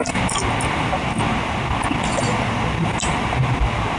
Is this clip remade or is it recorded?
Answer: recorded